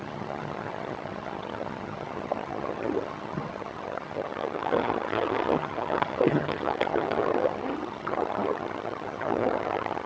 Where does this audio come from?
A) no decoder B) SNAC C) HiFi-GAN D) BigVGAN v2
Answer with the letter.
C